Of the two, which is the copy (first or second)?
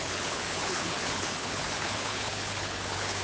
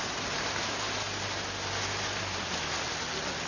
first